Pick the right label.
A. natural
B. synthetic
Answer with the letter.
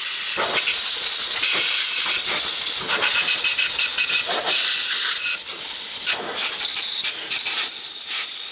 A